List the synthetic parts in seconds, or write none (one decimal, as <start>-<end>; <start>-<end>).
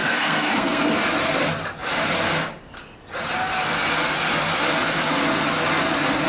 0.0-0.8